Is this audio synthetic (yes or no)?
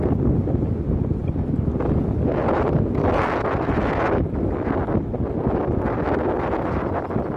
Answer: no